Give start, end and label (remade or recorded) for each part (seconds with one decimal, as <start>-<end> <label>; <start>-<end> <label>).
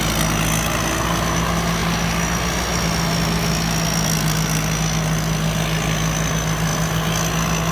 0.0-7.7 recorded